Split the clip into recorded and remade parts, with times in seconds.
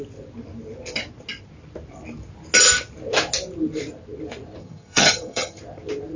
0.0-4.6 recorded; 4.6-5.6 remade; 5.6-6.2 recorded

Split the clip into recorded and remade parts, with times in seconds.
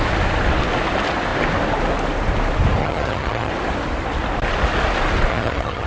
0.0-2.8 recorded; 2.8-3.5 remade; 3.5-5.3 recorded; 5.3-5.9 remade